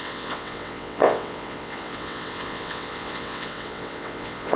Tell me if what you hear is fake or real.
fake